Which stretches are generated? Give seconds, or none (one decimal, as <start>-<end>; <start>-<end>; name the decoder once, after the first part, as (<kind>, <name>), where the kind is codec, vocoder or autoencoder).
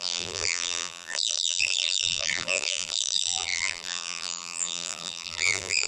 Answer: 0.0-5.9 (vocoder, BigVGAN v2)